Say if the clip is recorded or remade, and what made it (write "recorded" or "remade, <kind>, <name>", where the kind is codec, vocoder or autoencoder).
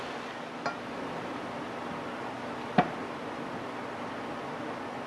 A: recorded